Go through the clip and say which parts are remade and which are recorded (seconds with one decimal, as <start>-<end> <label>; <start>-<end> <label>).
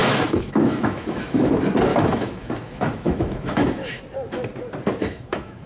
0.0-1.5 remade; 1.5-1.9 recorded; 1.9-4.0 remade; 4.0-5.0 recorded; 5.0-5.7 remade